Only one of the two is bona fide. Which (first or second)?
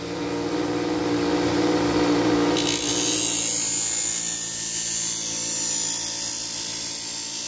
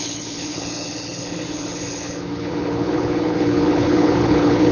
first